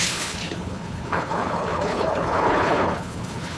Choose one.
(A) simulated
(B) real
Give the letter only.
A